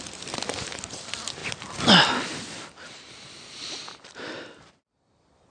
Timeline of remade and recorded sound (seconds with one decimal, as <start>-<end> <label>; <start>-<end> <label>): 0.0-5.5 recorded